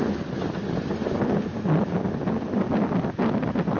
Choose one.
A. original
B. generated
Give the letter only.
A